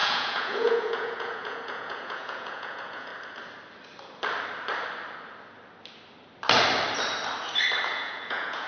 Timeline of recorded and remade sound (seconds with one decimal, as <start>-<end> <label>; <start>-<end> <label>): 0.0-3.1 remade; 3.1-7.8 recorded; 7.8-8.7 remade